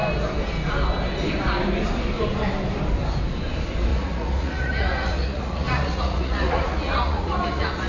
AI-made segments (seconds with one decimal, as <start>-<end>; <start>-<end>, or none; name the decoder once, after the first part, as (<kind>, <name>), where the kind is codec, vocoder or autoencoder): 3.9-7.9 (vocoder, Vocos)